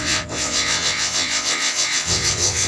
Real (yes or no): no